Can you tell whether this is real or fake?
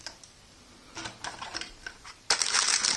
fake